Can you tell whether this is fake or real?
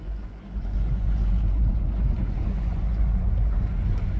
fake